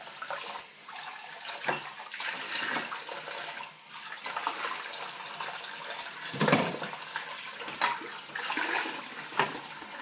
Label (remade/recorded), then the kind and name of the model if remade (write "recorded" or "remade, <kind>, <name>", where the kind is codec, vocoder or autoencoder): recorded